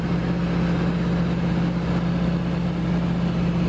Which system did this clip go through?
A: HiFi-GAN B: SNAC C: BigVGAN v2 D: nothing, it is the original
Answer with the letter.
D